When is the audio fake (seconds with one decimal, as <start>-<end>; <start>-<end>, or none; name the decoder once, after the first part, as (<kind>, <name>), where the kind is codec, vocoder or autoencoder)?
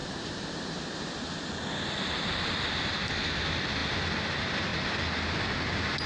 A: 0.0-0.8 (vocoder, BigVGAN v2)